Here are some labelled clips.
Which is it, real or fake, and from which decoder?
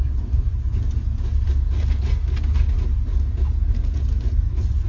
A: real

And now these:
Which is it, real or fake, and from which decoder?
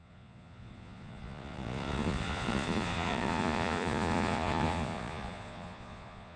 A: fake, vocoder, Vocos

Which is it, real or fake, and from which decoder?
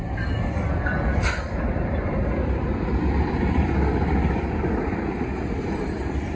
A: fake, vocoder, BigVGAN v2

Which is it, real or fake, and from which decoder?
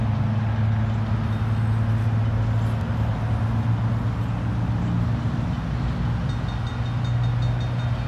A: real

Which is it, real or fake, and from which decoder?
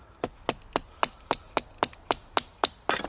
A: real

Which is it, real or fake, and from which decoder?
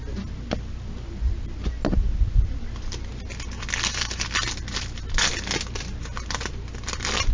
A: real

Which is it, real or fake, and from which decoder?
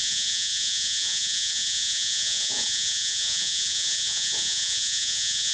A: fake, vocoder, Vocos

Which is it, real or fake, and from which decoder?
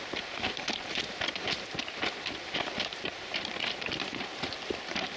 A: fake, vocoder, BigVGAN v2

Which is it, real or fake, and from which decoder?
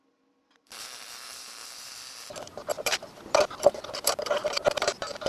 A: fake, vocoder, BigVGAN v2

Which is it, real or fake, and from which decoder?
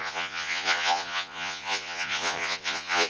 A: fake, vocoder, Vocos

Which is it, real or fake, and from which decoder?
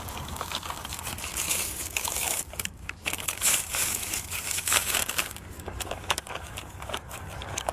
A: fake, codec, DAC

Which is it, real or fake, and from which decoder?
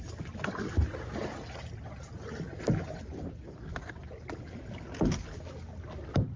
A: real